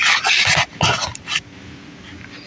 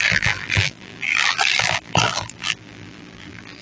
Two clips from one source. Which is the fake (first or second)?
second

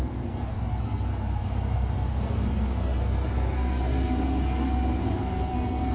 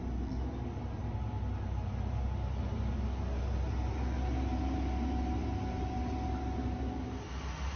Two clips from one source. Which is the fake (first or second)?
first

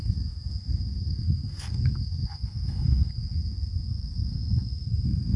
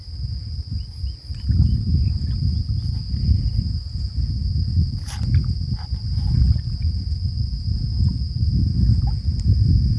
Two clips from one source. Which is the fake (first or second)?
first